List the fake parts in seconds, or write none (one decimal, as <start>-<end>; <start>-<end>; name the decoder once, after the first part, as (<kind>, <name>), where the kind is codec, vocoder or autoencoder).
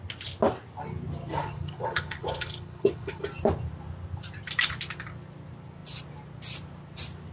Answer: 1.4-3.2 (codec, HILCodec)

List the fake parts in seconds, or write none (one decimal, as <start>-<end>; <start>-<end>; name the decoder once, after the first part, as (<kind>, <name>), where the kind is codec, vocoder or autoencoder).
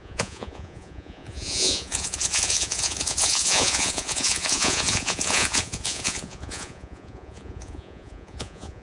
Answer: 0.0-8.8 (vocoder, Vocos)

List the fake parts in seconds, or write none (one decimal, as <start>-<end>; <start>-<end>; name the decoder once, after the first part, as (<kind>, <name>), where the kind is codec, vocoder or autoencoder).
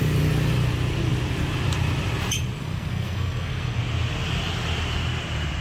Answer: 2.6-3.8 (codec, SNAC)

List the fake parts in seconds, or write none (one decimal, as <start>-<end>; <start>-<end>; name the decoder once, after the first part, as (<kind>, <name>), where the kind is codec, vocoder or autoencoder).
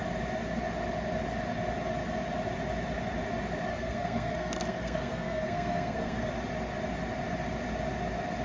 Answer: 3.7-6.3 (codec, SNAC)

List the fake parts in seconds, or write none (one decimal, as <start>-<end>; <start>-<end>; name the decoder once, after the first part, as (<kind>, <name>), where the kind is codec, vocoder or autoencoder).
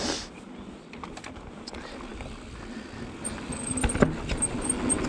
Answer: none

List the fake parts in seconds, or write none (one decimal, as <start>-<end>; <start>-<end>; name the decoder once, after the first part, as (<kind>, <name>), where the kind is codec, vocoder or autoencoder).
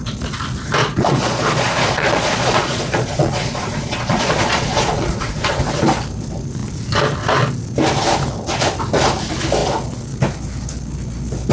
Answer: 0.8-5.6 (vocoder, Vocos)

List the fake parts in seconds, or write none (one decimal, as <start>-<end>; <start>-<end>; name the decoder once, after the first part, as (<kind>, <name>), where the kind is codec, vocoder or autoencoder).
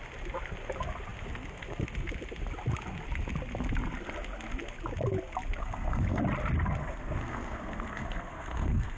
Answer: 5.6-6.2 (codec, SNAC); 6.8-9.0